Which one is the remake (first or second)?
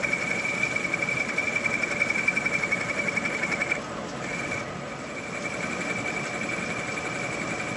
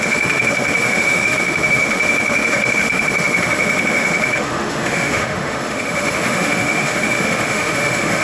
second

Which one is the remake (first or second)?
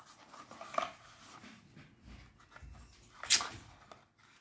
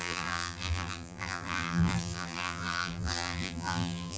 second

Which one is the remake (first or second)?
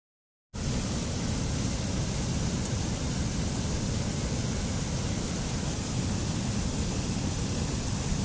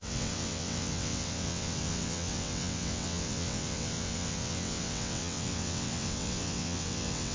second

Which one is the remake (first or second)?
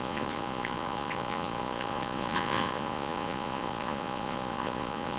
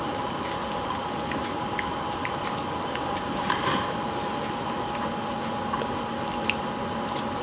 first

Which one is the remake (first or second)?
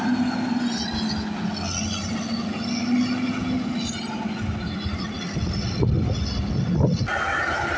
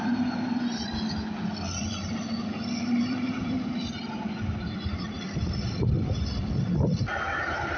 second